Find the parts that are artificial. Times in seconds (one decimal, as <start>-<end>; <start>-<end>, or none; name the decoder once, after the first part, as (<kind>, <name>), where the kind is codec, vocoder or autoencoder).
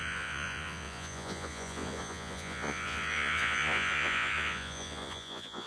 0.0-5.7 (vocoder, Vocos)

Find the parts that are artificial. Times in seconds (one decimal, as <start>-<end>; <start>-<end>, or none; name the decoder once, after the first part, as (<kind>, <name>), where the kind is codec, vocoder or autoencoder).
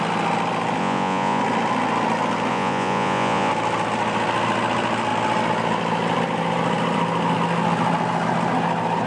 0.8-1.4 (vocoder, Vocos); 2.5-3.5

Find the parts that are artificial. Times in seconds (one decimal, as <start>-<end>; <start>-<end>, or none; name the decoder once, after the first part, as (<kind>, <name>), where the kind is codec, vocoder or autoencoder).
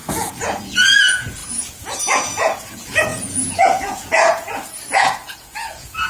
0.0-6.1 (vocoder, Vocos)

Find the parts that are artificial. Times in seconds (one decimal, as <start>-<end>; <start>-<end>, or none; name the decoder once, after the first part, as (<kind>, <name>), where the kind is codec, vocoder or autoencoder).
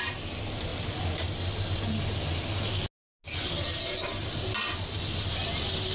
none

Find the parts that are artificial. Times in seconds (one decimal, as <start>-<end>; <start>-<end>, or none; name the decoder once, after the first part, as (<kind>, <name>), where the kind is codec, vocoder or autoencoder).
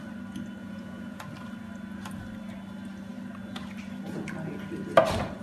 0.6-1.2 (vocoder, Vocos)